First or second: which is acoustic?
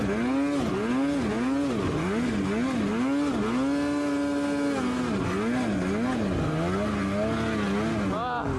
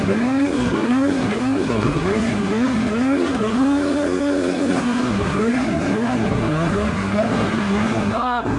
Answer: first